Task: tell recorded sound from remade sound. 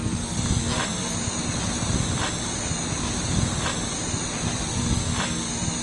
recorded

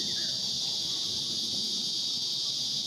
recorded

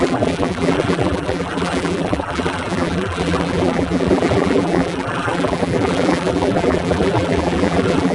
remade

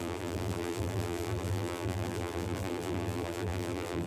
remade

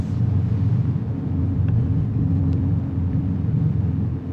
remade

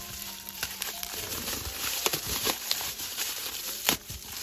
remade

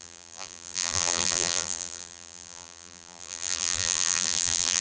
remade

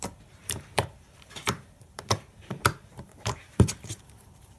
remade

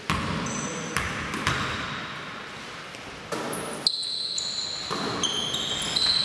recorded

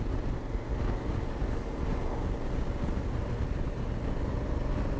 recorded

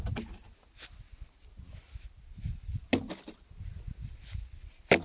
recorded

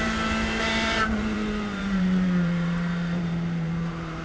remade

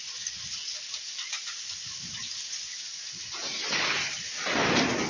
recorded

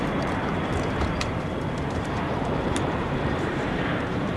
remade